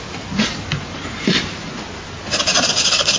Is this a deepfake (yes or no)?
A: no